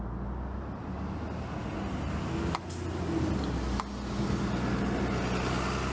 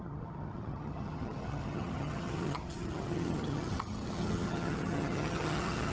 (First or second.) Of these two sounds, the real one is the first